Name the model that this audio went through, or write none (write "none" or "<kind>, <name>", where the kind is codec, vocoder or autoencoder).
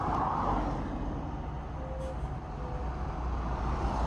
none